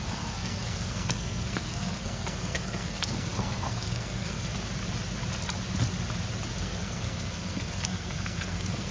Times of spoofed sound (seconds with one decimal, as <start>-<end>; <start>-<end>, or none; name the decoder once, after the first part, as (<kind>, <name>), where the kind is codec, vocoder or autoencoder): 0.0-4.5 (codec, SNAC); 6.6-8.9